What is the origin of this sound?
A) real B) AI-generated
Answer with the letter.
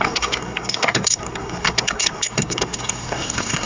B